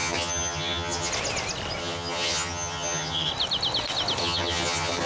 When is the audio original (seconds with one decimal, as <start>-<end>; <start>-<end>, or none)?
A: 1.1-1.8; 3.3-4.2

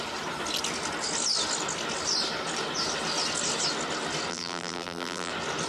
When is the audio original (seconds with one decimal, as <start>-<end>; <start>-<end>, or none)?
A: 0.0-4.3; 5.3-5.7

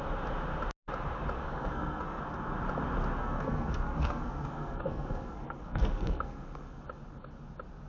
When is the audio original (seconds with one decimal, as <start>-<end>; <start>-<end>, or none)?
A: 0.0-1.4; 2.2-3.2; 6.8-7.9